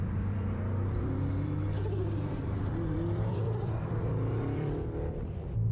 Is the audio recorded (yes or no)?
no